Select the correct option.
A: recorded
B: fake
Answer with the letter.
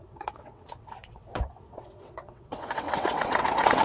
B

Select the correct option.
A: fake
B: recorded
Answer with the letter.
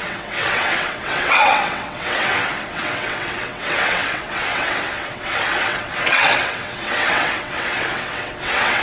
A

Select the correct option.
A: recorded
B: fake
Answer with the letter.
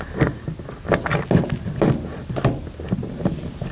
A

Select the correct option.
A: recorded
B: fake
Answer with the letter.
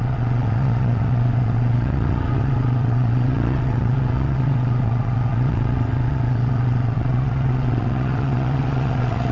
B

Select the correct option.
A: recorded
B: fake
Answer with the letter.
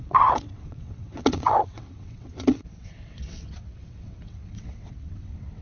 B